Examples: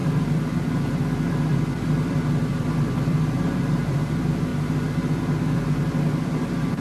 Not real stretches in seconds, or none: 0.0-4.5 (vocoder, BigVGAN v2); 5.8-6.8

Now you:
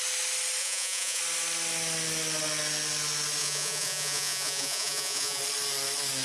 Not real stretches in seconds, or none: 0.6-1.2 (vocoder, Vocos); 3.4-5.4

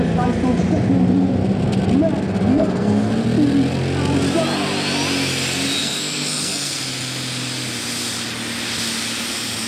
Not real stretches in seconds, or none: 2.5-3.1 (codec, SNAC); 5.8-6.8

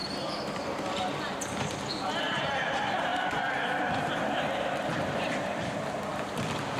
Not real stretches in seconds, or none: 0.0-6.8 (vocoder, BigVGAN v2)

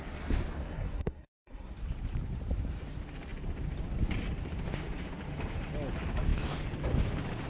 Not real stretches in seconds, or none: 0.6-1.7 (codec, SNAC)

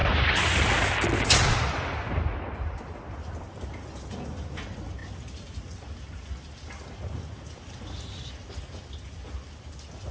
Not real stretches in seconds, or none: none